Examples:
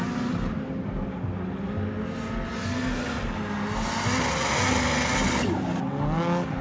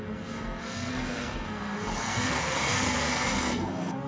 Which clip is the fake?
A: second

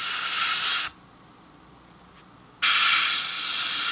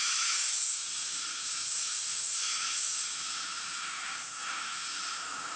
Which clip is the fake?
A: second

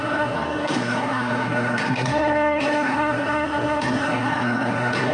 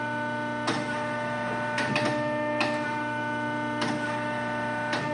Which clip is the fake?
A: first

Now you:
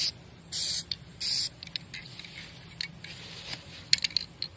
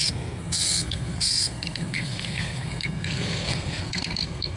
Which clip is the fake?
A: second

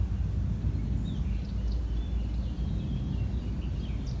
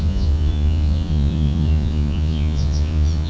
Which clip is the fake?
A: second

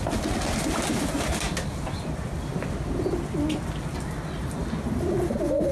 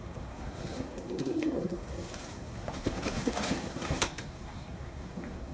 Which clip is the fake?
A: second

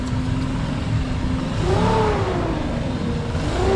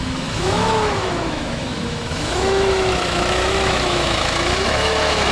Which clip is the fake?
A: second